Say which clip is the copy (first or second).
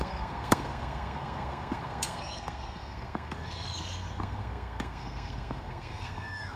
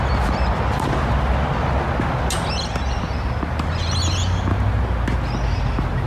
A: first